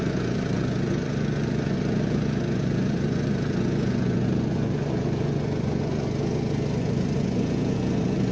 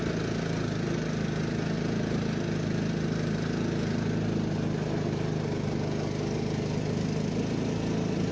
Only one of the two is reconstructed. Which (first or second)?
first